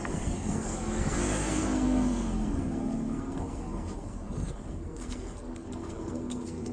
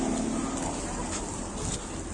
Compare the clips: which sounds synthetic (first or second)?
first